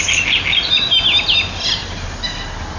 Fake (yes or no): no